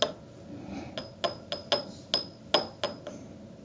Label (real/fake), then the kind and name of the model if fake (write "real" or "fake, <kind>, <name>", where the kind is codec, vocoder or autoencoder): real